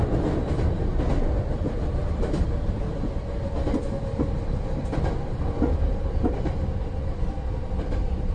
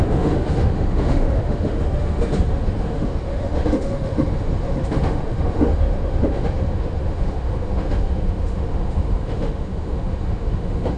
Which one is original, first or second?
first